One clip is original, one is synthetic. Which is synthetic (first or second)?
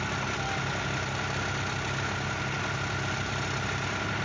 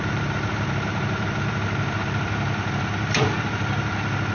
second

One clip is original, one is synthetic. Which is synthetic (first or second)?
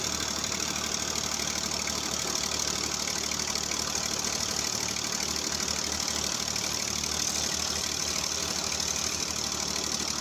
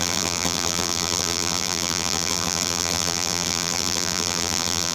second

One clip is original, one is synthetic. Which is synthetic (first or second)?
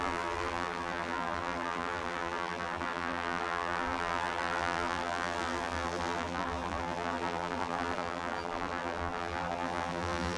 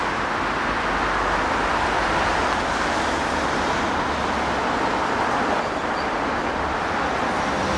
first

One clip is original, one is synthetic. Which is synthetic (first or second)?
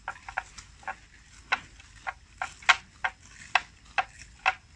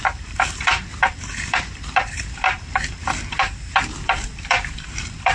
second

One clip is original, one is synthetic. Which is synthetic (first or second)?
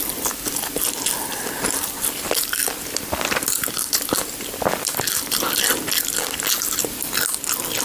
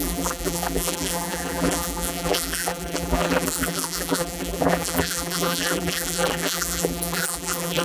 second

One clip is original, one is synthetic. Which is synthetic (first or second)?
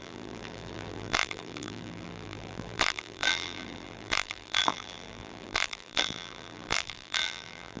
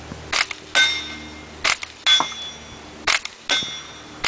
first